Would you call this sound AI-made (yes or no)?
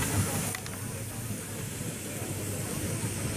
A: no